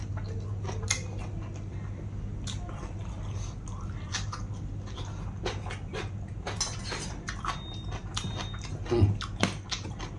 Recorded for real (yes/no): yes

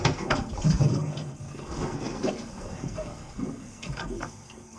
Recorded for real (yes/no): no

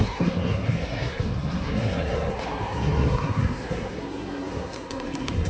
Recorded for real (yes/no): no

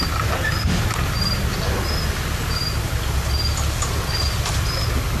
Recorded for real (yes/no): yes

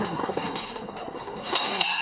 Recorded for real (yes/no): no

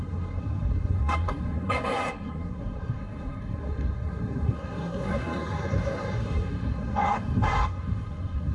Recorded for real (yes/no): no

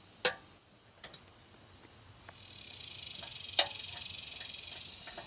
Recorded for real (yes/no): yes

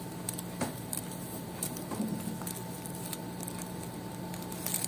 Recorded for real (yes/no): yes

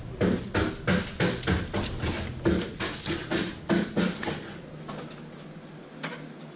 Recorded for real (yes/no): yes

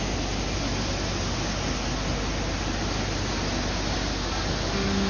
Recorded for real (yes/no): yes